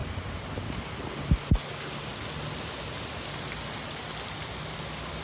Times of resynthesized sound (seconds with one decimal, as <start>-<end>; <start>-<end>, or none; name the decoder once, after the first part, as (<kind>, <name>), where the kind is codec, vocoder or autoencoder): 0.0-0.8 (vocoder, BigVGAN v2)